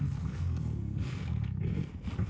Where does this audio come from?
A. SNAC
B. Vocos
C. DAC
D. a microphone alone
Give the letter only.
A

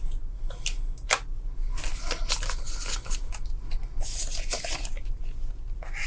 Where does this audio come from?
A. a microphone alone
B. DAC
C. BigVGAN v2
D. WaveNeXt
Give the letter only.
A